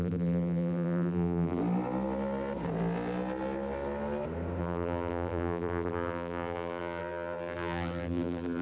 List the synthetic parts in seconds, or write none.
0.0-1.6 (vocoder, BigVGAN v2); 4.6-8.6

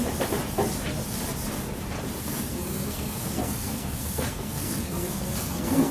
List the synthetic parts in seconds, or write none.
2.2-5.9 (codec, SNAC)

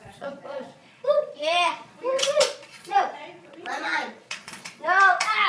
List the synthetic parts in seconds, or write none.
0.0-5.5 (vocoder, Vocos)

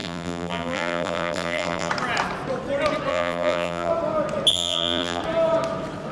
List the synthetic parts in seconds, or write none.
0.0-1.9 (vocoder, BigVGAN v2); 3.1-3.9; 4.5-5.2

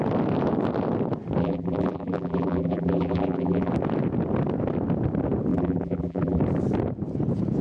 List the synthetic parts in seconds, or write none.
1.4-3.7 (vocoder, BigVGAN v2); 5.5-6.4